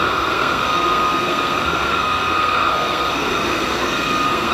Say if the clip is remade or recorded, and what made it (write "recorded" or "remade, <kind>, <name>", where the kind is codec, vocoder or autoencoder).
remade, codec, SNAC